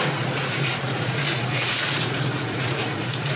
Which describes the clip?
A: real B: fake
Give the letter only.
B